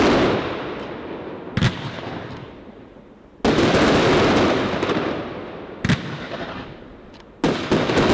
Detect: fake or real real